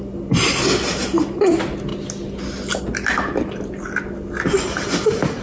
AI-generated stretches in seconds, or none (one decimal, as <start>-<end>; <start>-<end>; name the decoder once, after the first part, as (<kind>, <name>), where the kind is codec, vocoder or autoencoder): none